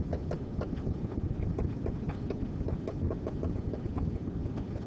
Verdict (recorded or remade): recorded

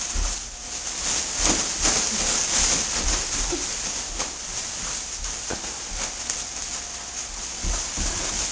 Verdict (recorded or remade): recorded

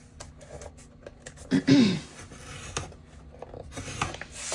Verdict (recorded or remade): recorded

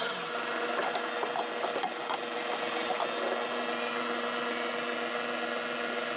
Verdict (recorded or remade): recorded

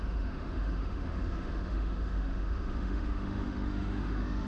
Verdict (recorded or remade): remade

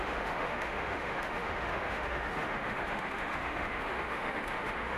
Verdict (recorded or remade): remade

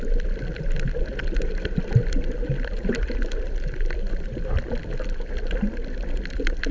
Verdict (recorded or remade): recorded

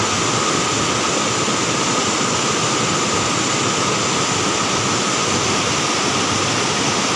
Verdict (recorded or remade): recorded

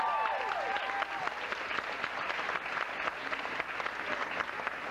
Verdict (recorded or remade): recorded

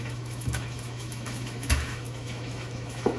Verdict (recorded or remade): remade